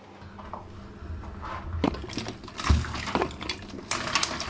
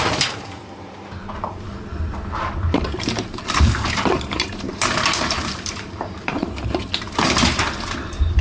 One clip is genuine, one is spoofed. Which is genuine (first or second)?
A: first